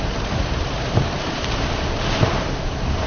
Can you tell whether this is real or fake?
fake